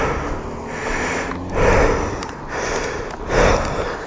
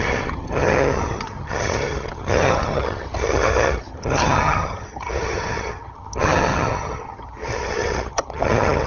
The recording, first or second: first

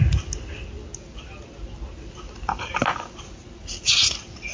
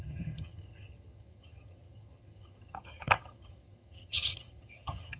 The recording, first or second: first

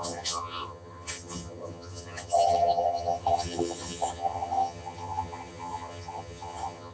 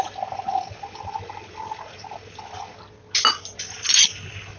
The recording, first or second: second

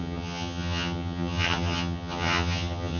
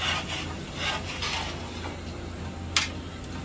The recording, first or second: second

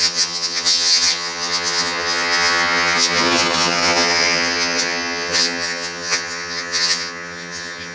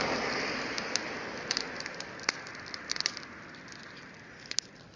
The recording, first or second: second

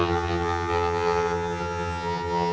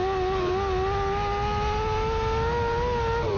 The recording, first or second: second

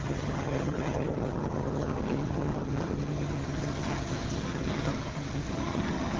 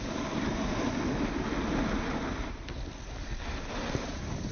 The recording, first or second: second